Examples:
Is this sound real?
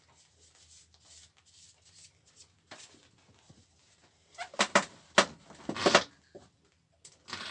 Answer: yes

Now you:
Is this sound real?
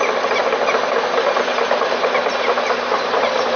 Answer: yes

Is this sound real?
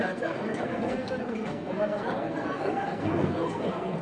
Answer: no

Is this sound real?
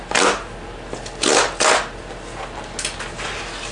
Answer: yes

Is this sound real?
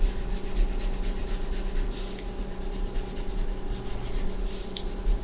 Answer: yes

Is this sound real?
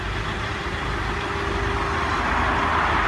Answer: yes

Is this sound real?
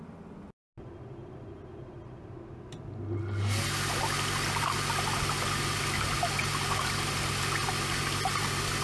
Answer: yes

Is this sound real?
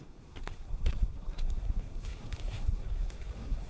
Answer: no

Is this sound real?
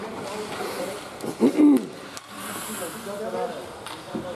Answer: yes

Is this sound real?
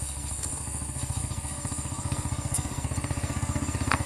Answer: no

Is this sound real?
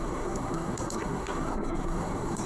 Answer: no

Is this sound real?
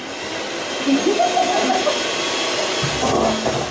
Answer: yes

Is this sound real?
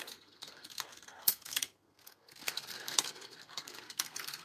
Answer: no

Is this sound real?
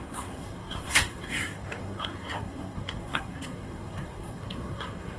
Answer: no